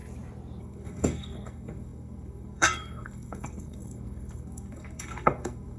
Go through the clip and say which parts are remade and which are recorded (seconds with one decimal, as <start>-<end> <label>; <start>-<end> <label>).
0.0-0.6 recorded; 0.6-5.8 remade